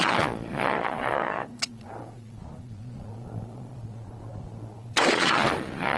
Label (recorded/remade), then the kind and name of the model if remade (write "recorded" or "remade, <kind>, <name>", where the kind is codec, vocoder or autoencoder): remade, vocoder, Vocos